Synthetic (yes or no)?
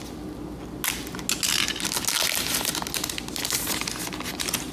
no